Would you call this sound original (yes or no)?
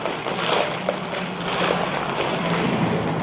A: yes